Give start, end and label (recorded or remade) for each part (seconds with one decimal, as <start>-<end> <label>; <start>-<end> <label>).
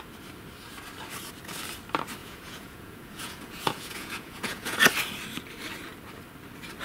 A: 0.0-2.2 recorded; 2.2-4.8 remade; 4.8-6.8 recorded